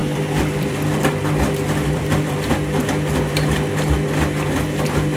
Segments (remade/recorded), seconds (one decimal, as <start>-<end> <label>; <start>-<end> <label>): 0.0-2.5 remade; 2.5-5.2 recorded

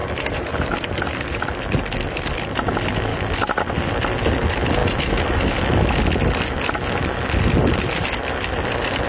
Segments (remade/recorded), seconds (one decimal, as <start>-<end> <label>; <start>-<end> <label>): 0.0-1.4 remade; 1.4-9.1 recorded

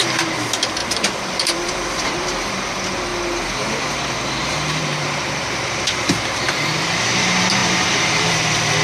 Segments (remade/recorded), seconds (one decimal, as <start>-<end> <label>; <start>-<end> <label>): 0.0-3.1 remade; 3.1-3.9 recorded; 3.9-8.8 remade

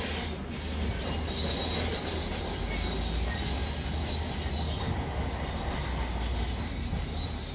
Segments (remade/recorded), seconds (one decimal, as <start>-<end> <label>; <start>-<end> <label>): 0.0-7.5 recorded